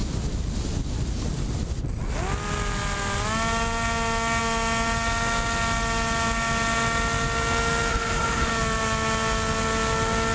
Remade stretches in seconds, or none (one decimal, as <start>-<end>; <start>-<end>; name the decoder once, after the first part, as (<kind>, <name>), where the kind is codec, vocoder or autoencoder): 7.9-8.5 (codec, HILCodec)